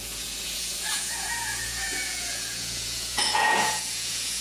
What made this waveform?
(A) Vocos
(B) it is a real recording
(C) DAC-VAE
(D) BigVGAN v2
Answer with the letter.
A